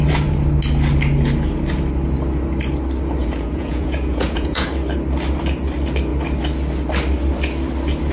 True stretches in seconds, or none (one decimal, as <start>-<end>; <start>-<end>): 0.0-3.2; 4.7-8.1